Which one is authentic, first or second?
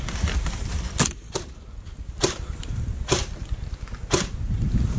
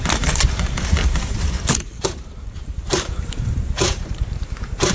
first